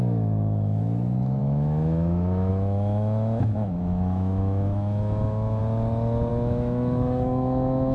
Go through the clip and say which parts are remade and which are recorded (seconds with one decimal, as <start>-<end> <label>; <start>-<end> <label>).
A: 0.0-5.6 remade; 5.6-6.3 recorded; 6.3-7.9 remade

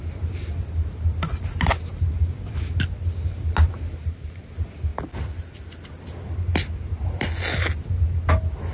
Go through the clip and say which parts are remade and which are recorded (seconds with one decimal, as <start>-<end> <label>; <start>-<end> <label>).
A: 0.0-8.7 recorded

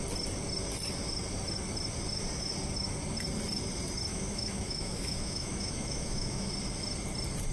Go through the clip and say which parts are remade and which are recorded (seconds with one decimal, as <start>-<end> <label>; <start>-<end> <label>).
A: 0.0-4.1 recorded; 4.1-6.5 remade; 6.5-7.5 recorded

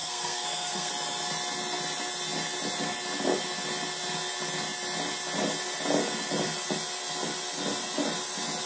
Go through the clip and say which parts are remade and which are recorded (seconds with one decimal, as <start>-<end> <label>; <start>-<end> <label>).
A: 0.0-0.9 remade; 0.9-8.7 recorded

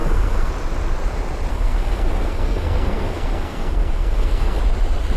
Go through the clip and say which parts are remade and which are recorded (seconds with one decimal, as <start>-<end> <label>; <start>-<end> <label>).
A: 0.0-0.5 remade; 0.5-1.5 recorded; 1.5-4.6 remade; 4.6-5.2 recorded